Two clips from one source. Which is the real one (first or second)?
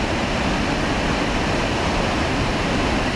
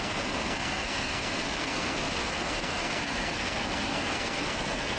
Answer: first